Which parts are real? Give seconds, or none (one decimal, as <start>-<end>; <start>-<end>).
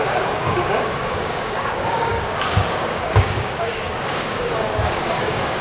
none